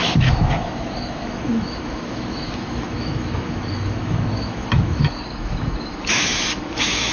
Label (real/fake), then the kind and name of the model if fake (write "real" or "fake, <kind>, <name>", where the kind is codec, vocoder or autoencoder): fake, autoencoder, DAC-VAE